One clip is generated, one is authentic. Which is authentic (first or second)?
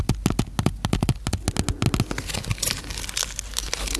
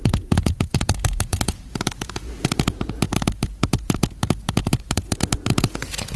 first